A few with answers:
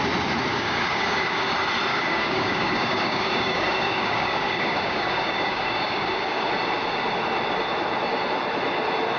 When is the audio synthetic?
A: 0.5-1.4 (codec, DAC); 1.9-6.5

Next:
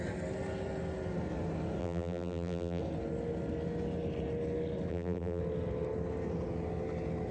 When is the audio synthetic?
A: 1.8-2.8 (vocoder, BigVGAN v2); 4.9-5.4

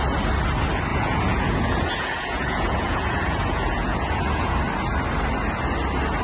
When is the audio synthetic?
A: 0.9-4.6 (vocoder, Vocos)